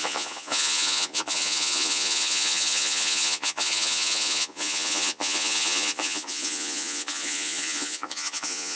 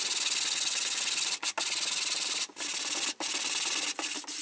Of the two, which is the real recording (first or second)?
second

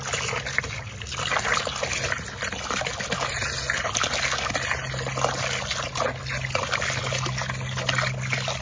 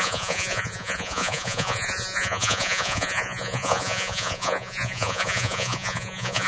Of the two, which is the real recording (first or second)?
first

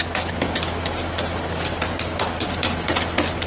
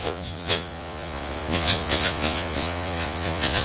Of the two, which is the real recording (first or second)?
first